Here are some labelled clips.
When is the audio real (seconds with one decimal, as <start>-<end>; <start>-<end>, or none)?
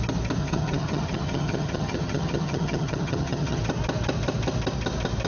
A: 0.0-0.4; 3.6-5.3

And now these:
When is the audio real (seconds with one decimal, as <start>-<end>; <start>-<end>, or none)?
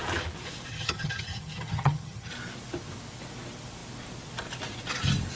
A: 0.0-0.7; 2.3-5.4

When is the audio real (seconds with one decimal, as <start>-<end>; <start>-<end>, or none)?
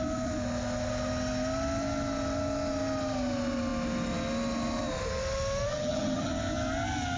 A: 0.0-5.7; 6.3-7.2